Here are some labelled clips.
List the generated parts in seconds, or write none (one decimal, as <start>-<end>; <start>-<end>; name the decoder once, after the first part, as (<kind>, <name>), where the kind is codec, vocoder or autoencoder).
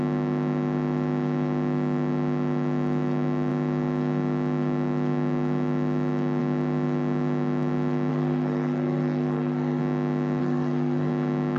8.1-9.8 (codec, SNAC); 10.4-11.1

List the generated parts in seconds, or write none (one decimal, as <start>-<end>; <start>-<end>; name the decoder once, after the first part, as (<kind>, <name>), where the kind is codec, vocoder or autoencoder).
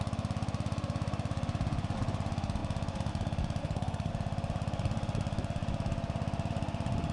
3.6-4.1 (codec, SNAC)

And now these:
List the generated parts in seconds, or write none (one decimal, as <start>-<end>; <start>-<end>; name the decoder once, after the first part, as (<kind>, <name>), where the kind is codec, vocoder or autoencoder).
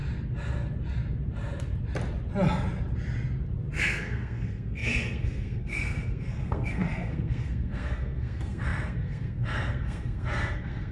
3.8-10.9 (codec, SNAC)